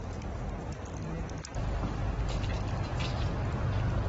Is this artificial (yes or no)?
no